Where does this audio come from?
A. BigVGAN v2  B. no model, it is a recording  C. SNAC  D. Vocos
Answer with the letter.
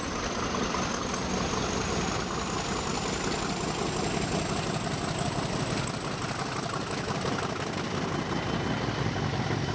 B